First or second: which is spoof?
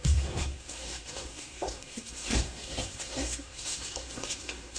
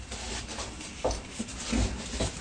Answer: first